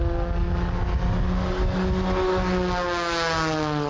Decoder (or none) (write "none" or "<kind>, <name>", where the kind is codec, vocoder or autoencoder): none